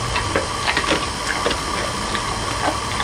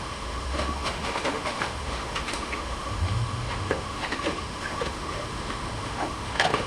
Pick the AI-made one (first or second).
second